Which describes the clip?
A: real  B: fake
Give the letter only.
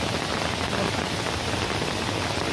A